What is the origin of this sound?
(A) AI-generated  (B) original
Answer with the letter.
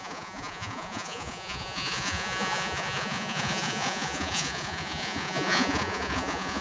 A